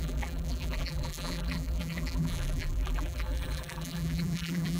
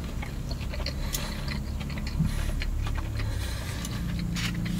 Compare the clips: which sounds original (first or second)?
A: second